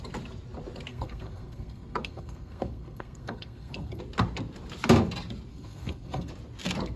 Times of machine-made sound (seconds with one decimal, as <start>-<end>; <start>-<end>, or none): 0.9-4.0; 5.5-6.3